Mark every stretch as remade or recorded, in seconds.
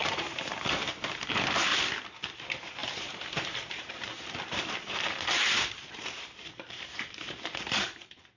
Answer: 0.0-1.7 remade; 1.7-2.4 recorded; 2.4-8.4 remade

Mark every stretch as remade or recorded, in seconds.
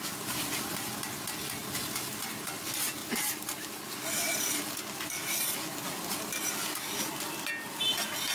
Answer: 0.0-8.3 recorded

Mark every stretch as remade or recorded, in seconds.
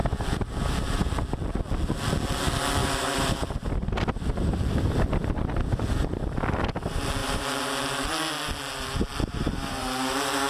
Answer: 0.0-1.0 remade; 1.0-2.8 recorded; 2.8-6.4 remade; 6.4-7.2 recorded; 7.2-7.7 remade; 7.7-9.1 recorded; 9.1-9.7 remade; 9.7-10.5 recorded